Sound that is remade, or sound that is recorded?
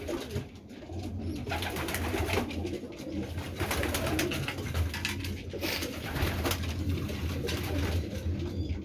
recorded